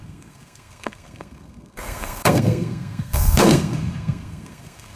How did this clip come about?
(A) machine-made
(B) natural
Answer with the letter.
A